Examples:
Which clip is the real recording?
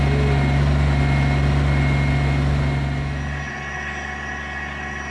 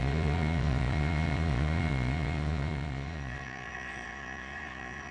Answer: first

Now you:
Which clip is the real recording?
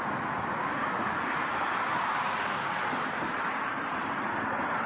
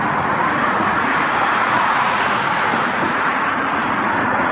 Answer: first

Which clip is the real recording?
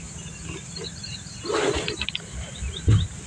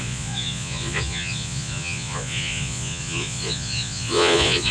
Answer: first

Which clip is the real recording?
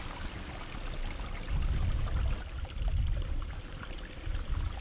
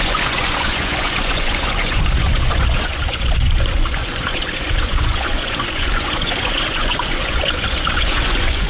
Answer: first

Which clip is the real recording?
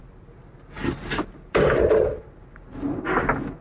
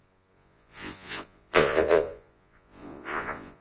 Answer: first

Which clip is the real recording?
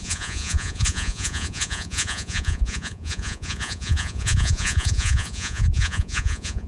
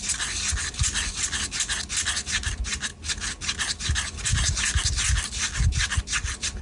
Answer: second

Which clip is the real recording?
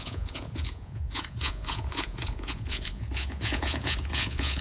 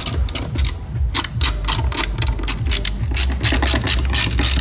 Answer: second